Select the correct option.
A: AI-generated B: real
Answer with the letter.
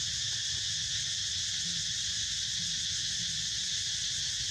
B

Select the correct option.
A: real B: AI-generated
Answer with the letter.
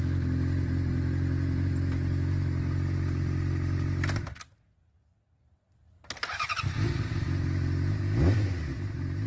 A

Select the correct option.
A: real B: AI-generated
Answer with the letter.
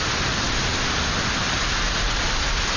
B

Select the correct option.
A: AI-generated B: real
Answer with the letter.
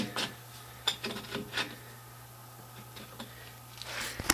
B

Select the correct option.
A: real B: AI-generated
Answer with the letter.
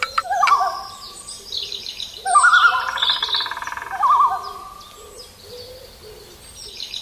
A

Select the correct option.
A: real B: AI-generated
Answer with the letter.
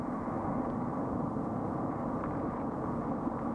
A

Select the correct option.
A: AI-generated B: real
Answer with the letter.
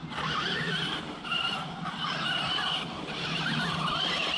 A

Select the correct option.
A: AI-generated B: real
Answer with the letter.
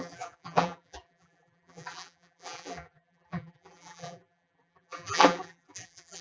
A